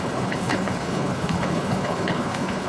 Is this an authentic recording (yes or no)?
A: no